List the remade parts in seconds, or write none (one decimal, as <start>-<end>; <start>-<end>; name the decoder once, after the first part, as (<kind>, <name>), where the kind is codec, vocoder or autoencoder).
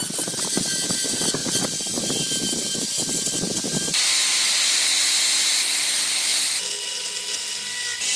1.4-4.2 (vocoder, BigVGAN v2)